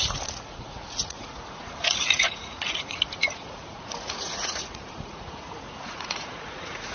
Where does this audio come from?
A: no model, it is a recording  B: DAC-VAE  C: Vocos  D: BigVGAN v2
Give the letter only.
C